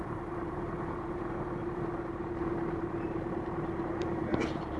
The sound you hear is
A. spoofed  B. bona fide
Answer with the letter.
A